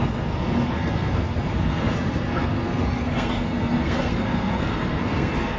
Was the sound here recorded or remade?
remade